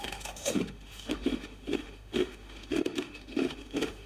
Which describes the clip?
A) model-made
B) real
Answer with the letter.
A